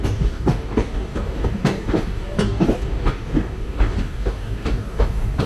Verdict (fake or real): fake